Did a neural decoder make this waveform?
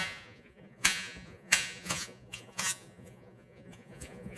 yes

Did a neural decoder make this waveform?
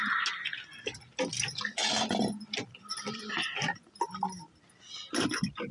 no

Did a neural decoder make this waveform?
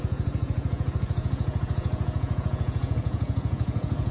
yes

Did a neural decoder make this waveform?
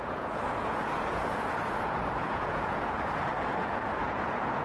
yes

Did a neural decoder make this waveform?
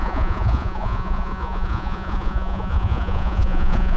yes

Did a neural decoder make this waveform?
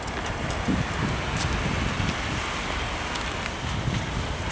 no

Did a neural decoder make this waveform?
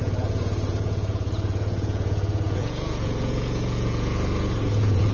yes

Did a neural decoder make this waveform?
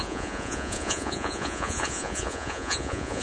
yes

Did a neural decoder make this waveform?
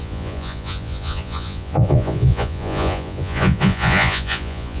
yes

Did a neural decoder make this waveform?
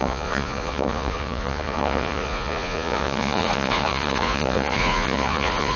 yes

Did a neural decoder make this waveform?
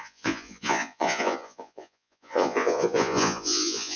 yes